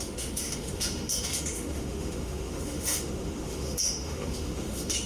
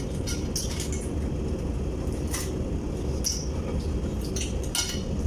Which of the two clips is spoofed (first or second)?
first